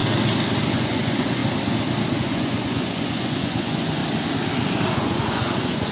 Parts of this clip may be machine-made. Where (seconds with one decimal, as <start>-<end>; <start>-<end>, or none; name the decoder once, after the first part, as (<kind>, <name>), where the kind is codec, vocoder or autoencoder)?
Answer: 0.7-1.4 (vocoder, Vocos); 2.2-4.0; 4.9-5.9